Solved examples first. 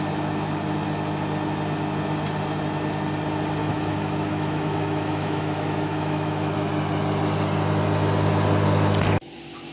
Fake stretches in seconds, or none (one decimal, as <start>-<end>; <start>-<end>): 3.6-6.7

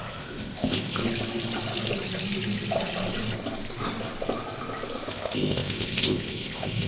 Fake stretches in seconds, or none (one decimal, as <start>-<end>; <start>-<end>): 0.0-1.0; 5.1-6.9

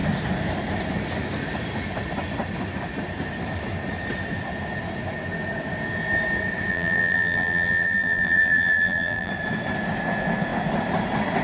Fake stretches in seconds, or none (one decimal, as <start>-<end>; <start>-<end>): 6.7-9.3

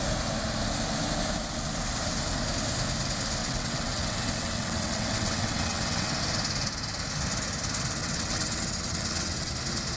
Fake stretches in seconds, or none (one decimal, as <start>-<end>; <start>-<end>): 3.4-6.2; 8.0-9.5